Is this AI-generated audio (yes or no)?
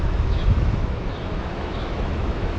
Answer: yes